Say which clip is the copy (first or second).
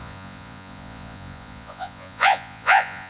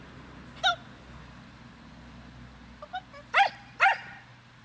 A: first